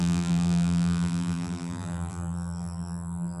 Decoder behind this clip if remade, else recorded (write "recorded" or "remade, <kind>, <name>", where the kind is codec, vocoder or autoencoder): remade, vocoder, BigVGAN v2